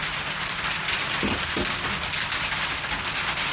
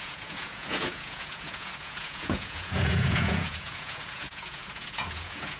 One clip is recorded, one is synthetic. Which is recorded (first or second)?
first